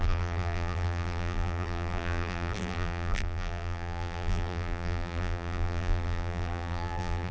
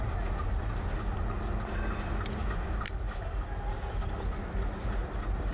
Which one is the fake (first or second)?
first